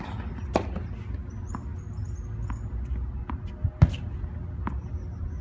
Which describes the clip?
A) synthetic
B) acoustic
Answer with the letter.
B